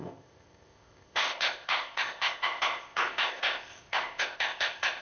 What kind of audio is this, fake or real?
fake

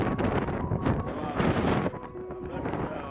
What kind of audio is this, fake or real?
fake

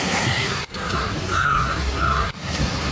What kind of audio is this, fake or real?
fake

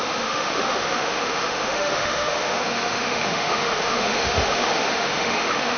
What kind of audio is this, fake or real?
fake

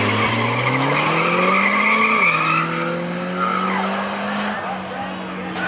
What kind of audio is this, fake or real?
real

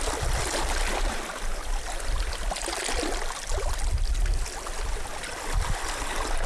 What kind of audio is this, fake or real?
real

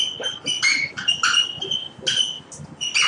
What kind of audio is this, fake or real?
real